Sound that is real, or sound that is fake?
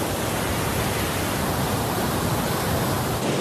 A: fake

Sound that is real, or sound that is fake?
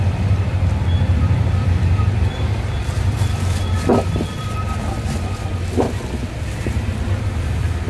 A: fake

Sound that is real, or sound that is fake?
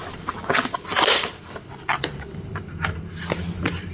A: fake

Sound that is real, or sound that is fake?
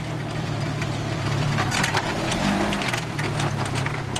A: fake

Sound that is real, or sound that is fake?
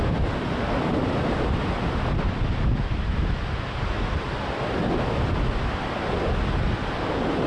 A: real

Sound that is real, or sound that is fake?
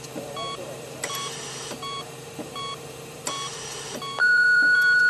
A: fake